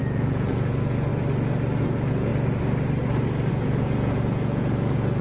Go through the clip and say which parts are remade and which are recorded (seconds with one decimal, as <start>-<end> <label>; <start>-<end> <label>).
0.0-1.1 remade; 1.1-1.8 recorded; 1.8-2.3 remade; 2.3-3.5 recorded; 3.5-5.2 remade